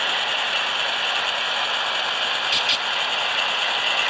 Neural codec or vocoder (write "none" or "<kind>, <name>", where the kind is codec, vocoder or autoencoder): vocoder, BigVGAN v2